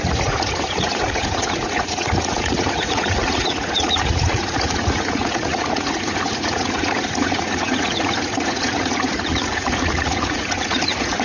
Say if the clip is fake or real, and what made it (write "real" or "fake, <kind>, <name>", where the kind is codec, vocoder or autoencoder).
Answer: fake, vocoder, Vocos